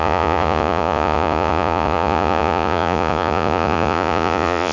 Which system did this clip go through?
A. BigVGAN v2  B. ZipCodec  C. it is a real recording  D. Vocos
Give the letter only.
D